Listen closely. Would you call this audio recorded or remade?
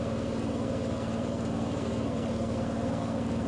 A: remade